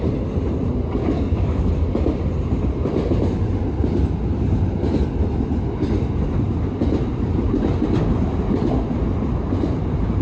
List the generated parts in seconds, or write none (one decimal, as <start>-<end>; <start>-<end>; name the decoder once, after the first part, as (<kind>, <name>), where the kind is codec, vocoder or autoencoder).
1.0-1.7 (codec, DAC)